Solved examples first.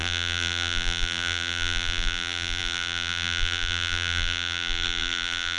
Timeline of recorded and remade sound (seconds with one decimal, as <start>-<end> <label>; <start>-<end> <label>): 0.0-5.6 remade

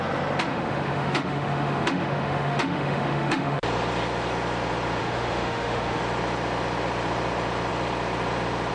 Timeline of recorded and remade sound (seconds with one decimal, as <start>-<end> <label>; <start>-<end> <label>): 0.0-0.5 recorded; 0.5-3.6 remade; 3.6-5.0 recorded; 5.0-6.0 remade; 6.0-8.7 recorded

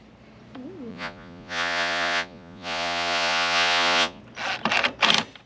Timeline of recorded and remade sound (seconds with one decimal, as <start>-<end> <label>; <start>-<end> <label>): 0.0-0.9 recorded; 0.9-4.2 remade; 4.2-5.5 recorded

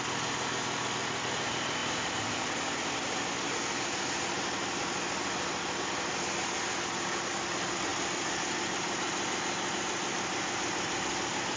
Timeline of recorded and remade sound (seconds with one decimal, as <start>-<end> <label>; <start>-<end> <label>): 0.0-11.6 recorded

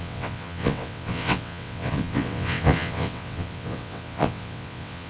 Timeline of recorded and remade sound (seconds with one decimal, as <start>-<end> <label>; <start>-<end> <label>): 0.0-5.1 remade

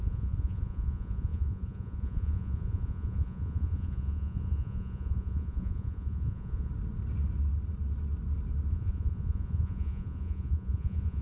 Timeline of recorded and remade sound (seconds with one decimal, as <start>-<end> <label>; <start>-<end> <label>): 0.0-6.7 remade; 6.7-8.7 recorded; 8.7-11.2 remade

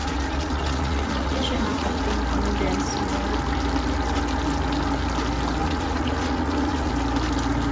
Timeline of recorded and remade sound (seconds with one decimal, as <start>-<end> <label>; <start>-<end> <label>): 0.0-2.0 remade; 2.0-5.6 recorded; 5.6-6.9 remade; 6.9-7.7 recorded